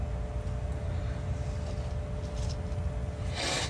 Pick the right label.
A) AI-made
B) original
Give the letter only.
B